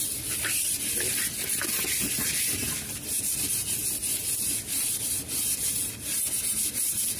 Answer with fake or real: real